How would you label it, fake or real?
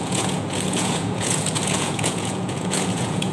fake